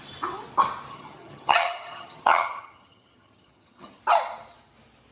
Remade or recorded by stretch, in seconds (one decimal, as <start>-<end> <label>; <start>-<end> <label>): 0.0-0.9 recorded; 0.9-4.0 remade; 4.0-5.1 recorded